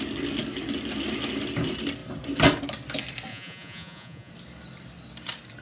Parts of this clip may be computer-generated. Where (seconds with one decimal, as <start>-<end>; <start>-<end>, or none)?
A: 3.3-4.3